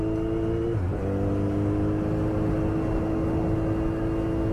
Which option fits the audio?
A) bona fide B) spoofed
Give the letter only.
A